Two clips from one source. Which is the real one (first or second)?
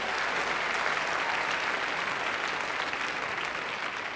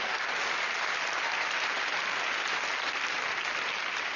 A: first